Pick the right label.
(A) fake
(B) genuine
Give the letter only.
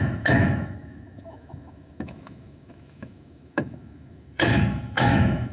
A